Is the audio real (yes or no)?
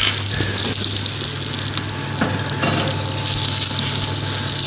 yes